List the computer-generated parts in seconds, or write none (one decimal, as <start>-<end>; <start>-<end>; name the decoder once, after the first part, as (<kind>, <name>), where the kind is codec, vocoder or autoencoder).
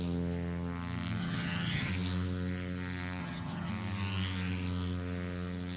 1.2-1.9 (vocoder, HiFi-GAN); 3.2-3.7